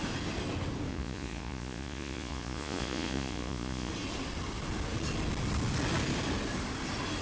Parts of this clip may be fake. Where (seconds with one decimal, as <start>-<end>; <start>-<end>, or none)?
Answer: 0.9-3.9